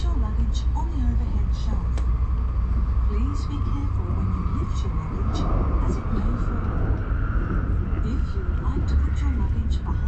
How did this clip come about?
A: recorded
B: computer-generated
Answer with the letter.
A